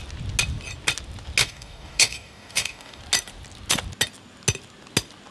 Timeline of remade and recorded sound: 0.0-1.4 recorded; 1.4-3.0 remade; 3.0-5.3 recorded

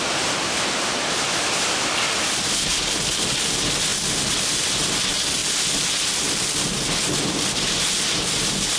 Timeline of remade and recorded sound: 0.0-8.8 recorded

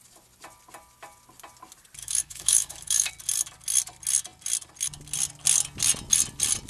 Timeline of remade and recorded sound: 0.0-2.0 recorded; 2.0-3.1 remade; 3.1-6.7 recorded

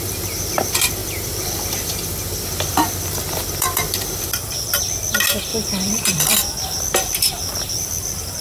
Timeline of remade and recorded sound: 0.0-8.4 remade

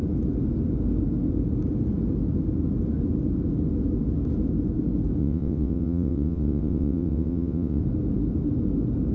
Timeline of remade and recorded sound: 0.0-5.2 recorded; 5.2-7.8 remade; 7.8-9.1 recorded

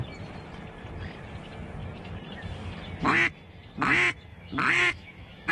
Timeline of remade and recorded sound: 0.0-4.3 recorded; 4.3-5.5 remade

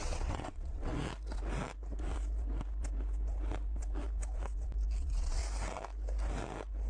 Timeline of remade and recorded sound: 0.0-0.9 remade; 0.9-5.0 recorded; 5.0-5.4 remade; 5.4-6.9 recorded

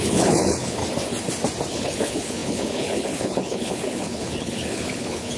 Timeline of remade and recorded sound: 0.0-0.8 remade; 0.8-1.7 recorded; 1.7-5.4 remade